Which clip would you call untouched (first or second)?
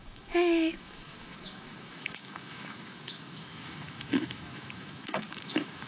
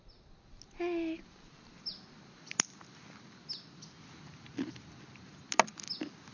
second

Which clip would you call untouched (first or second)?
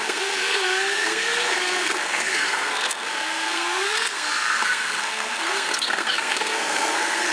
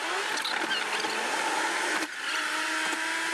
second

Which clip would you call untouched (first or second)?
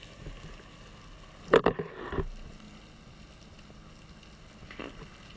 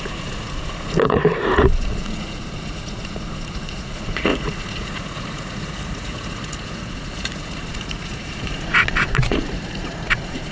first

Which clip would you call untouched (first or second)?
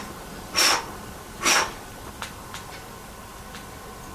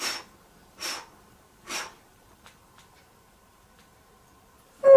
first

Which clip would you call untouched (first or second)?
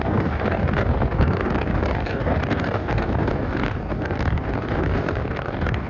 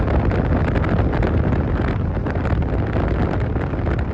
second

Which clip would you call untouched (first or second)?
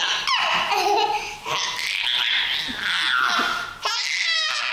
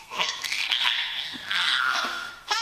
first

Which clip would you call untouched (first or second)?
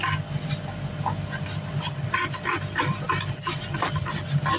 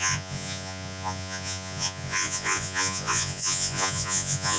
first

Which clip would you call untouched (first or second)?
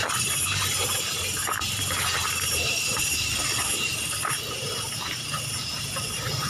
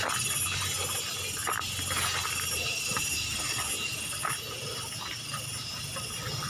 second